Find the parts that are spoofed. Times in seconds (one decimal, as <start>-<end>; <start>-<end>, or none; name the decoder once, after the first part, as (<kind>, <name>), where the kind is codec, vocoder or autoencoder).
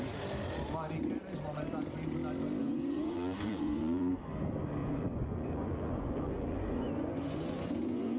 2.6-4.1 (vocoder, Vocos); 4.8-8.2